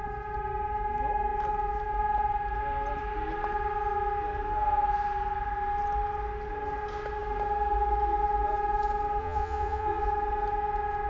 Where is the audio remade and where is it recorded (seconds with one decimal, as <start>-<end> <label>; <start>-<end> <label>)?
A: 0.0-9.2 recorded; 9.2-10.1 remade; 10.1-11.1 recorded